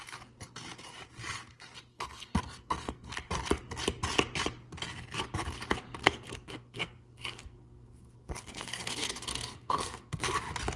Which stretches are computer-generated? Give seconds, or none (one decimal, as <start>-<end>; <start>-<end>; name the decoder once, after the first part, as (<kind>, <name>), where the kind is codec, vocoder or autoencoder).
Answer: 1.9-3.1 (codec, SNAC); 6.0-10.3